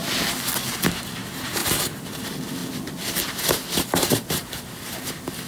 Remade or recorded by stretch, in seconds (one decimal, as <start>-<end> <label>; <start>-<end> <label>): 0.0-1.0 recorded; 1.0-1.6 remade; 1.6-2.2 recorded; 2.2-2.6 remade; 2.6-4.1 recorded; 4.1-5.5 remade